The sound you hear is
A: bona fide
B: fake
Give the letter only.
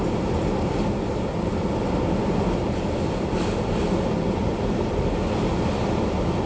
A